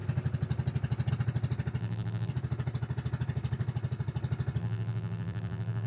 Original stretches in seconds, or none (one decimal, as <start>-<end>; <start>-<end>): 0.0-1.8; 2.3-4.6